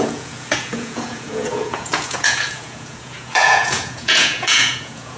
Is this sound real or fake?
fake